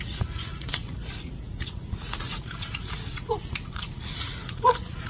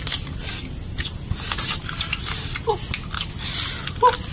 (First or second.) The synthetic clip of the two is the first